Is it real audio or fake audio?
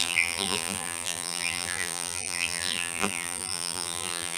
fake